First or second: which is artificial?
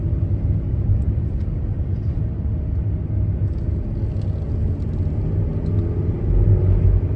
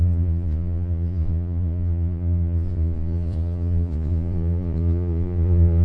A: second